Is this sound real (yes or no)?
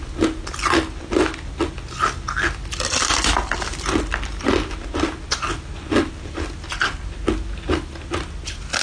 yes